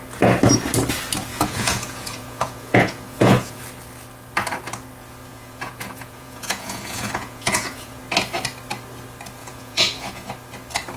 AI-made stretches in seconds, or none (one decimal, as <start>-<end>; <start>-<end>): 1.3-3.6; 5.3-8.0; 9.4-10.3